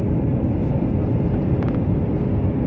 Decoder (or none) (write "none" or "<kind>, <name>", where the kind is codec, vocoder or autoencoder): none